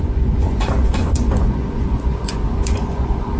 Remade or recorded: remade